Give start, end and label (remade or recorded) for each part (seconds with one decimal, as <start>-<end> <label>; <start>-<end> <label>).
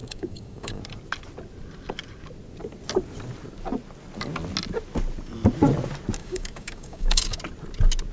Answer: 0.0-0.8 remade; 0.8-6.2 recorded; 6.2-7.4 remade; 7.4-8.1 recorded